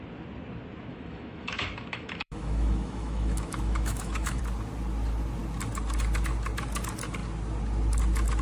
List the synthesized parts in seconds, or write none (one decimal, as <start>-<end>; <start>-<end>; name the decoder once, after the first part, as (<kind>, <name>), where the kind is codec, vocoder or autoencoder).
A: 0.9-4.4 (autoencoder, DAC-VAE)